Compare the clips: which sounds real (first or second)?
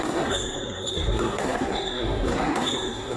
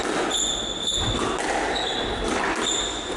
second